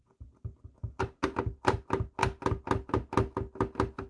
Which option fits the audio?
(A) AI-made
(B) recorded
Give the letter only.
B